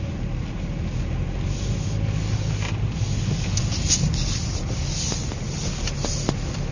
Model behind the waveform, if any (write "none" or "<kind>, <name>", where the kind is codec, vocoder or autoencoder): none